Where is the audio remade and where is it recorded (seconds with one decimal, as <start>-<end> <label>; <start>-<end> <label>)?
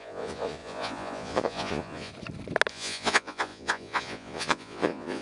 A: 0.0-2.1 remade; 2.1-2.7 recorded; 2.7-5.2 remade